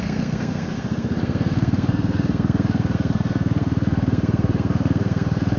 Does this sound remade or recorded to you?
remade